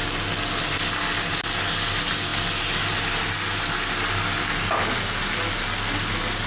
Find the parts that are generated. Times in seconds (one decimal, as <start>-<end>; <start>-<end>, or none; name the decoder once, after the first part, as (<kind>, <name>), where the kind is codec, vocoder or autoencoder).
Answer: none